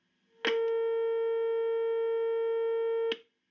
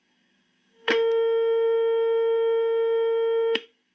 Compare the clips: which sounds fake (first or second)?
second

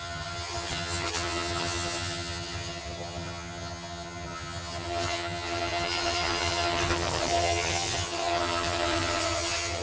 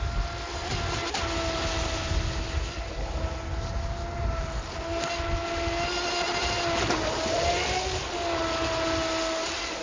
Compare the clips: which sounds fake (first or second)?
first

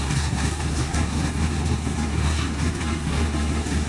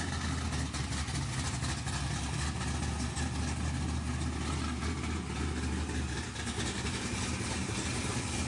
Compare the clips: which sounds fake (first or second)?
first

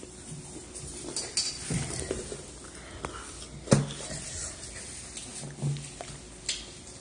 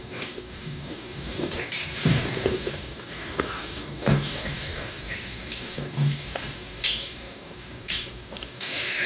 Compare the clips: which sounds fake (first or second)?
second